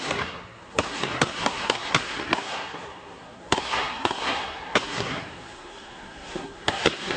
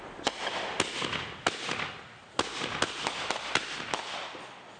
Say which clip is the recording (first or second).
second